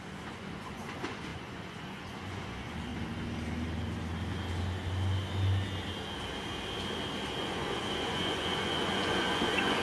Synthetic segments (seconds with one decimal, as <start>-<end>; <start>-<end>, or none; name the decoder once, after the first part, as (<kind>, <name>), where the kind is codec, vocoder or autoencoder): 0.0-2.9 (vocoder, Vocos); 7.4-9.8